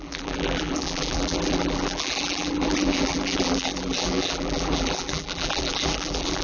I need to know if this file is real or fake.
fake